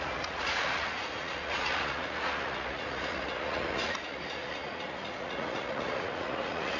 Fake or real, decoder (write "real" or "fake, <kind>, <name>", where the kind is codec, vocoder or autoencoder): fake, vocoder, Vocos